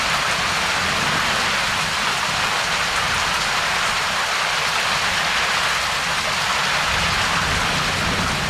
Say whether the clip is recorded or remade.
recorded